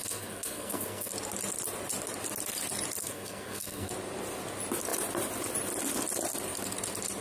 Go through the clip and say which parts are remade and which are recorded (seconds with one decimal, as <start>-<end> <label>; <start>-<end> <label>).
0.0-1.1 remade; 1.1-3.0 recorded; 3.0-3.9 remade; 3.9-7.2 recorded